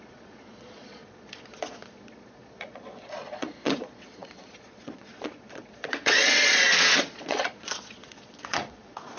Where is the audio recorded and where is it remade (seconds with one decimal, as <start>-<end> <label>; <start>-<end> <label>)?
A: 0.0-9.2 remade